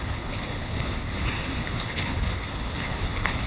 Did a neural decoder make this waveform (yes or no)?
yes